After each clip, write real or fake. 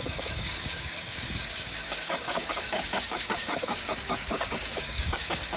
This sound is fake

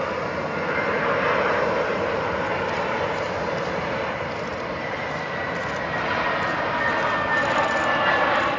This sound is real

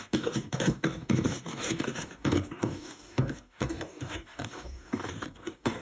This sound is fake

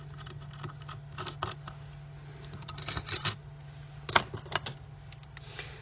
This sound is real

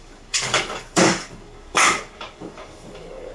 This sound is fake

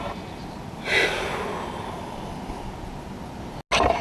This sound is real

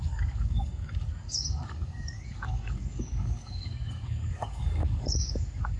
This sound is fake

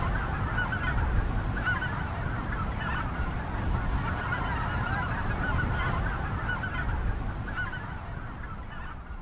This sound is real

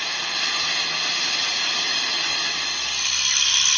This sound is real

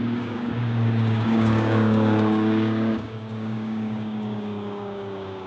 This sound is fake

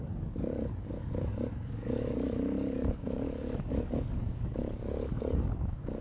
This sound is fake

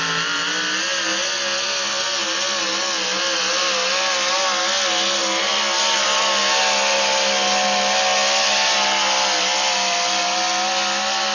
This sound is real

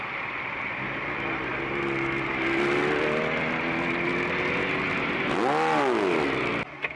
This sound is real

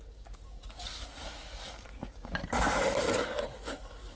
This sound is fake